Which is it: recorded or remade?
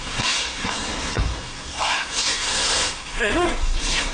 remade